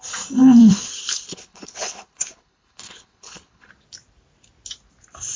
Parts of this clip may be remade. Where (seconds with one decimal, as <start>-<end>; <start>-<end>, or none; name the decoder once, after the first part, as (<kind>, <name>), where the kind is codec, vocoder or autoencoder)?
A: 0.6-3.7 (codec, HILCodec)